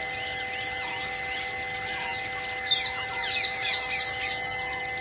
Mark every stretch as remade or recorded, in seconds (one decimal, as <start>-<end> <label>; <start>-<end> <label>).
0.0-5.0 recorded